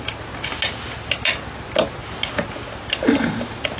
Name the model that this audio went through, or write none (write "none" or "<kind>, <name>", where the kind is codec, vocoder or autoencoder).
none